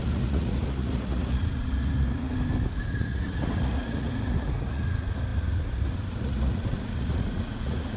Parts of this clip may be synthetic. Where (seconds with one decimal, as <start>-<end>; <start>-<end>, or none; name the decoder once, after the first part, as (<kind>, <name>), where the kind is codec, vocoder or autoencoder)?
0.0-2.3 (vocoder, Vocos); 2.9-8.0